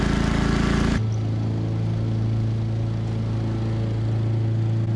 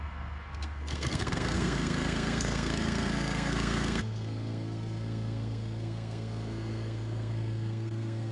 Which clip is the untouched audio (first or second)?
first